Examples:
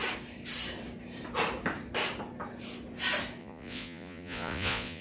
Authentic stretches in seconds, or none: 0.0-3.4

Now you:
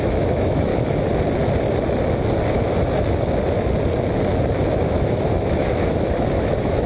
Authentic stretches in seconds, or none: 0.7-4.8

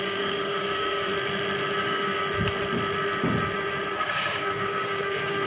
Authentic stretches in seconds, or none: 1.1-1.8; 2.2-3.9

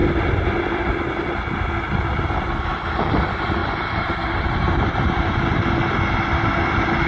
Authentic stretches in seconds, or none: 0.0-3.6; 5.4-7.1

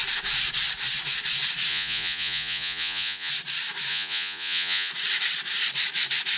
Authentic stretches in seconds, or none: 0.0-1.7; 3.3-3.9; 4.9-6.4

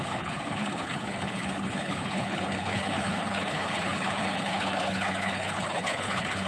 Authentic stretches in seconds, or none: none